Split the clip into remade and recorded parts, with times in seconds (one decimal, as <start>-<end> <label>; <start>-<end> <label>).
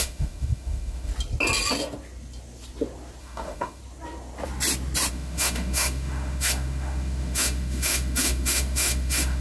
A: 0.0-1.1 remade; 1.1-3.2 recorded; 3.2-3.8 remade; 3.8-5.1 recorded; 5.1-9.4 remade